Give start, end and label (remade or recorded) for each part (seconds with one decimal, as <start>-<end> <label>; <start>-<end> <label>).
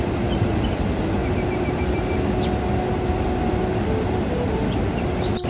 0.0-5.5 recorded